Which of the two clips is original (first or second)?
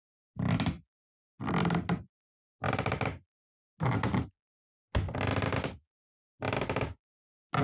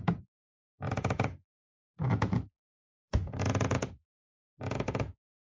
first